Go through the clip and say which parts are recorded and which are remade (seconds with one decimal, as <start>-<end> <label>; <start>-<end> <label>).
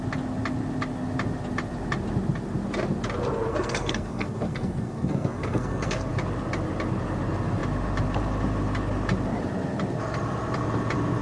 0.0-3.5 recorded; 3.5-6.1 remade; 6.1-11.2 recorded